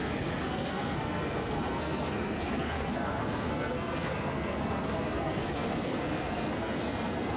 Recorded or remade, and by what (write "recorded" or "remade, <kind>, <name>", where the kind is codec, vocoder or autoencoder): remade, codec, SNAC